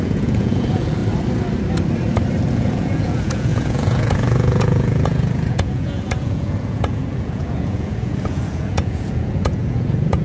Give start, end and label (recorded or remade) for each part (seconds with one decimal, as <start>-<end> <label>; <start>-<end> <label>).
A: 0.0-1.0 remade; 1.0-2.5 recorded; 2.5-10.2 remade